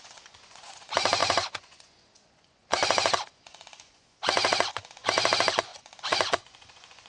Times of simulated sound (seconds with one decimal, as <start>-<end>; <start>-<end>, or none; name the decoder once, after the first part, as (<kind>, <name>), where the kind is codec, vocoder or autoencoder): 0.0-7.1 (vocoder, Vocos)